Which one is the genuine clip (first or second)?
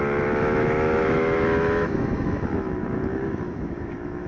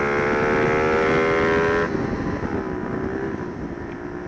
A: second